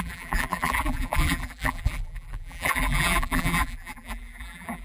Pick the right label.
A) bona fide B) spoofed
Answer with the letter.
B